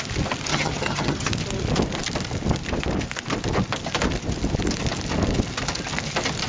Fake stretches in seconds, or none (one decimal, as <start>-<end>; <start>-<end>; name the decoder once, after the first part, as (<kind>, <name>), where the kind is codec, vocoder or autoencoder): 0.5-1.3 (vocoder, HiFi-GAN)